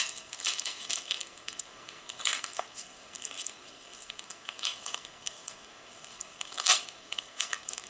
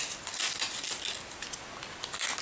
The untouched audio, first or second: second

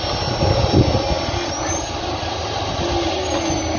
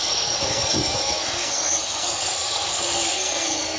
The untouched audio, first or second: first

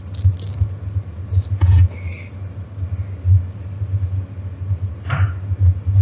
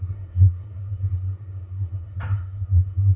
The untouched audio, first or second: first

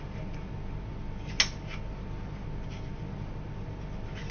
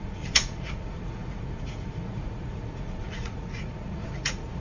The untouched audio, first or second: first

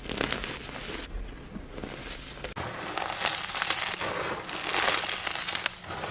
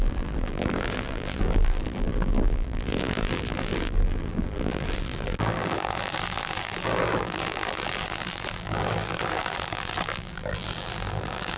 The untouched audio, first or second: first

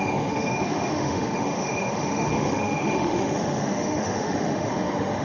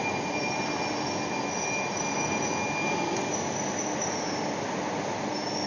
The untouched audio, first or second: second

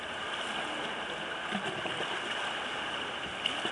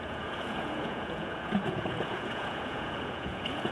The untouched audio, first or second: first